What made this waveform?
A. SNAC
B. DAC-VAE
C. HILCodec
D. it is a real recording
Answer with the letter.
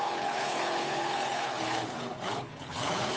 C